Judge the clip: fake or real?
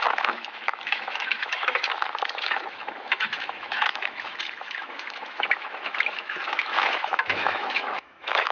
fake